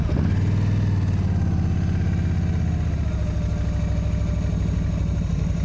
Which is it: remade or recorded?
recorded